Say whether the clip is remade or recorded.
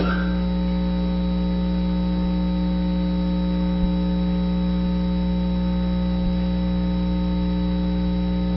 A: recorded